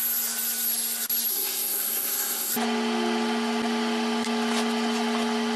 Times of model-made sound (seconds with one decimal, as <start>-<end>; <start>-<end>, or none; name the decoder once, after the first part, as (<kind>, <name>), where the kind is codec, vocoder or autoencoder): 1.3-2.5 (codec, SNAC)